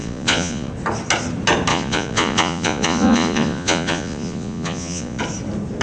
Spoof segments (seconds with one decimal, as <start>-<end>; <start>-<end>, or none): 0.0-0.7; 1.7-5.2